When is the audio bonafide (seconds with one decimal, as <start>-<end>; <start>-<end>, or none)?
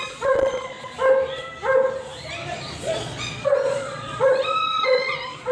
0.8-2.8